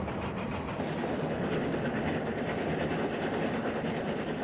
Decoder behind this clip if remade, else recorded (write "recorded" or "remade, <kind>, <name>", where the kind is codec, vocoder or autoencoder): recorded